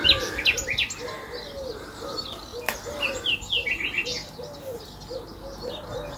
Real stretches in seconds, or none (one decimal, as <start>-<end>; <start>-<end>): 0.0-1.0; 2.5-3.0; 4.1-6.2